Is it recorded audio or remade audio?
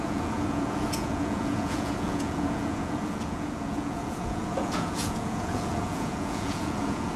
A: remade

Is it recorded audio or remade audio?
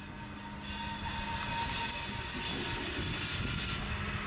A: recorded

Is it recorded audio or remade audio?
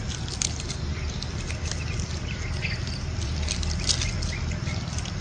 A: recorded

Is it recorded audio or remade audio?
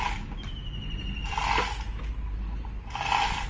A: recorded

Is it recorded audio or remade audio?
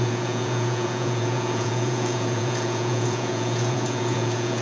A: remade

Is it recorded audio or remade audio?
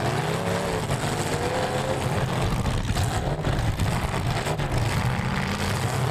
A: recorded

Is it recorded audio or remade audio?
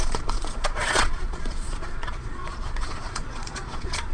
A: remade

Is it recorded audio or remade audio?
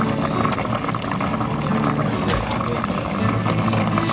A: recorded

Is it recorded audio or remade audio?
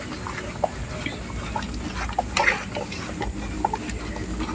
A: recorded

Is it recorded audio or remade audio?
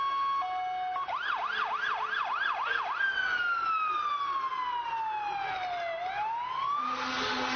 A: recorded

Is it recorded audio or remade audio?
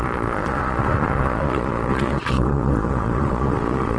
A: remade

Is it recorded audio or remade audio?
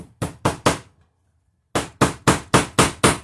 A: recorded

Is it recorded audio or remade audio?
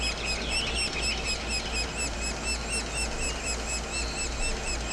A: recorded